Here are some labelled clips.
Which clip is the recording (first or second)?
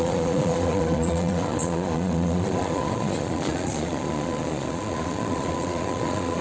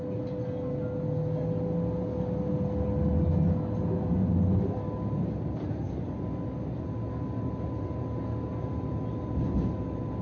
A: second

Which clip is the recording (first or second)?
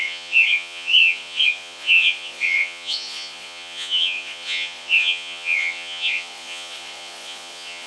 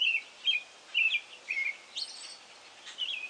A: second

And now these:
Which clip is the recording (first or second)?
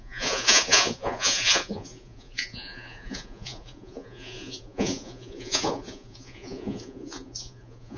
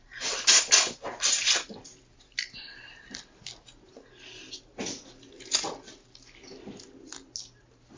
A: second